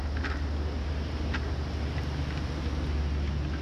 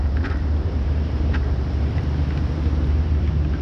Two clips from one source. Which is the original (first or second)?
first